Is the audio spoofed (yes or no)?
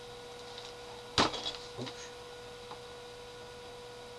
no